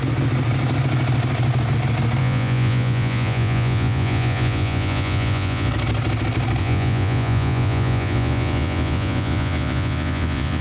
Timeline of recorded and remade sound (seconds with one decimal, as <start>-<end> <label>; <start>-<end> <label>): 0.0-2.2 recorded; 2.2-5.7 remade; 5.7-6.6 recorded; 6.6-10.6 remade